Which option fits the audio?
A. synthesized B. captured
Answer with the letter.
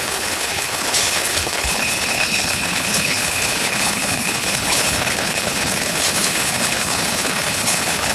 A